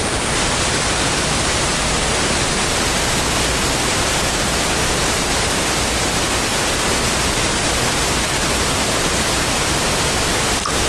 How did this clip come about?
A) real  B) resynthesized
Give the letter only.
A